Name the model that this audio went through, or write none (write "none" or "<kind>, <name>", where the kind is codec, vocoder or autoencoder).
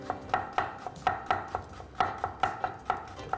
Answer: none